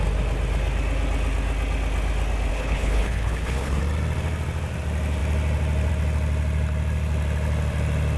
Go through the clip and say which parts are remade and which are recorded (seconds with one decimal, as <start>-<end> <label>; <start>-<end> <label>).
0.0-2.5 recorded; 2.5-3.8 remade; 3.8-8.2 recorded